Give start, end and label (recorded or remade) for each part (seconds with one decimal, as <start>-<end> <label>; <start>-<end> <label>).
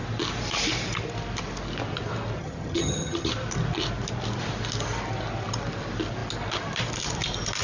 0.0-2.4 recorded; 2.4-3.3 remade; 3.3-7.6 recorded